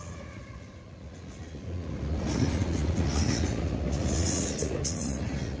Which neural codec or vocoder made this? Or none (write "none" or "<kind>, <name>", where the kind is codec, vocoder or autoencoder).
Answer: vocoder, Vocos